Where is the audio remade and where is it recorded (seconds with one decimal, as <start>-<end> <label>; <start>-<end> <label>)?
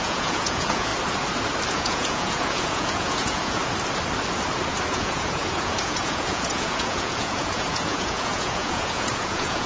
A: 0.0-0.9 remade; 0.9-1.7 recorded; 1.7-3.6 remade; 3.6-4.9 recorded; 4.9-9.7 remade